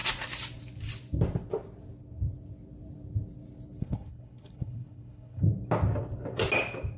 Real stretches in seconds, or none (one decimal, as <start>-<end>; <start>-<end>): 0.0-3.8; 5.4-7.0